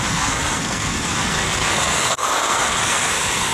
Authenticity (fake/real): fake